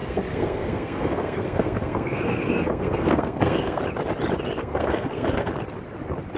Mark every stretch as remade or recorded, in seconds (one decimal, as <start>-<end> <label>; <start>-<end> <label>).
0.0-3.8 remade; 3.8-4.6 recorded; 4.6-5.5 remade; 5.5-6.4 recorded